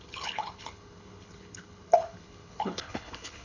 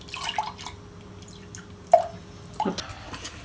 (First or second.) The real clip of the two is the second